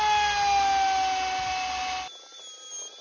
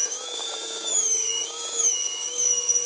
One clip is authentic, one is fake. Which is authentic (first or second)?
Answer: first